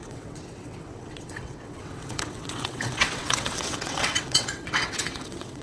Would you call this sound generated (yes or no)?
yes